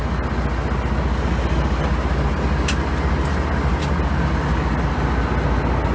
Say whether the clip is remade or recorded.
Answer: recorded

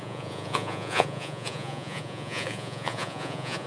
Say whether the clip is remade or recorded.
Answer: remade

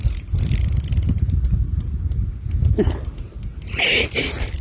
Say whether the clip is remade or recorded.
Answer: recorded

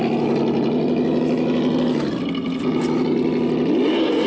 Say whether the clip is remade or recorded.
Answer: recorded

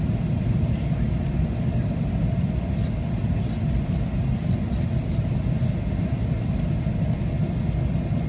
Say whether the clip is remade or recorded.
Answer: recorded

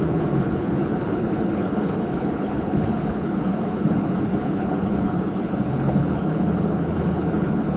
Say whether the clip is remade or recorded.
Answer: remade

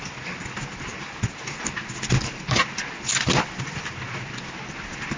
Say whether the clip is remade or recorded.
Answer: recorded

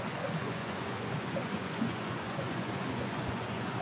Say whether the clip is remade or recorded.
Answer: remade